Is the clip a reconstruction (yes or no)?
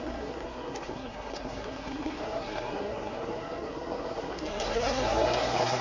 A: yes